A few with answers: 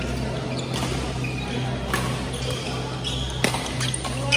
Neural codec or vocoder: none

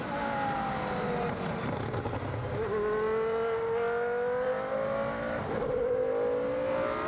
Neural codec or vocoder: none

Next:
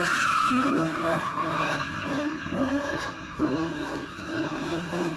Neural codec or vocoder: codec, SNAC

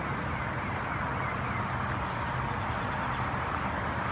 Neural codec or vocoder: none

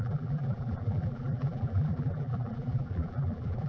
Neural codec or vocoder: vocoder, BigVGAN v2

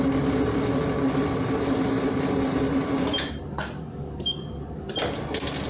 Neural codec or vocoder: none